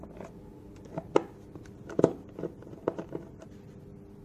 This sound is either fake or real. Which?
real